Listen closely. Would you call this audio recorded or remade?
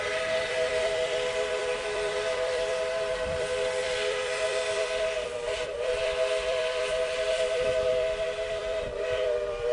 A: remade